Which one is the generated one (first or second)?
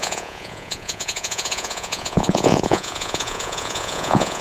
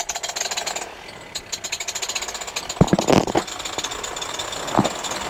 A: first